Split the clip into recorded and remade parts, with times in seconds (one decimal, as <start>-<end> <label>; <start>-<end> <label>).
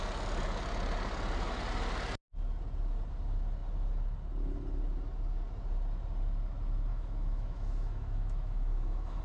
0.0-6.9 recorded; 6.9-9.2 remade